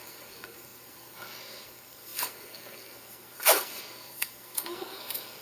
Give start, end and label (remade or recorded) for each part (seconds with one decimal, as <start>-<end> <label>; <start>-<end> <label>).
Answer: 0.0-5.4 remade